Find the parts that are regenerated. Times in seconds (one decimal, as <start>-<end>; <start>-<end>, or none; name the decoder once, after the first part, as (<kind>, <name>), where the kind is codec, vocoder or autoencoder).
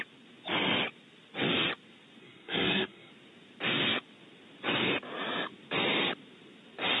2.2-3.1 (codec, SNAC)